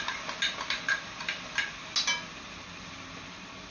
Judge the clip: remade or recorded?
recorded